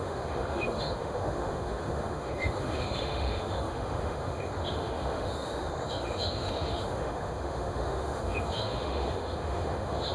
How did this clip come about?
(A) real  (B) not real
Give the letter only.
B